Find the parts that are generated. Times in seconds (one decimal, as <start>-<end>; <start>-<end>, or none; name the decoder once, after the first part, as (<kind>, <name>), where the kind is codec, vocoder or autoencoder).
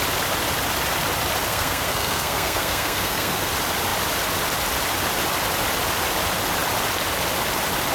1.5-3.5 (codec, SNAC)